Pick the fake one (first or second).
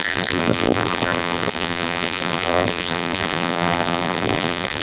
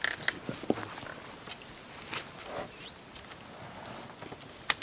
first